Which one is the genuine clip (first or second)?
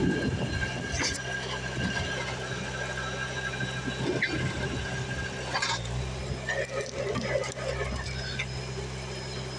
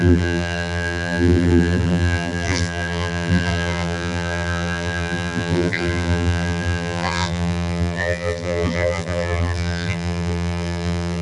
first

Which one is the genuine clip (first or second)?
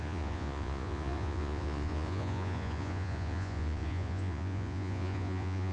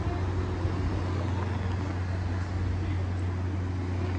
second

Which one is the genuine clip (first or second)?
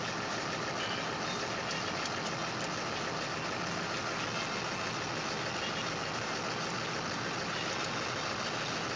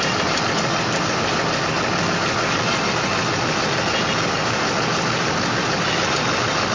first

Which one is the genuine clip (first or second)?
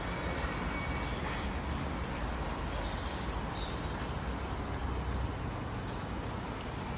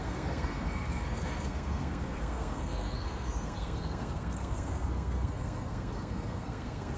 first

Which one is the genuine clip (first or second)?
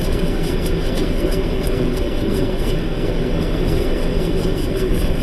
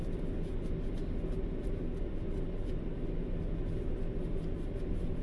second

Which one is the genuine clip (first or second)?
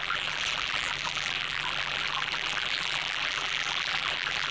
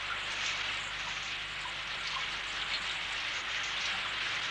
second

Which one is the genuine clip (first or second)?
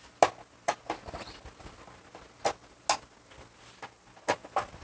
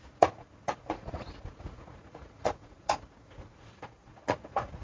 first